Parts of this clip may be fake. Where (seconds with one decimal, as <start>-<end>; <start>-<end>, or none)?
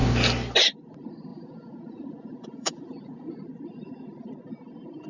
1.3-3.4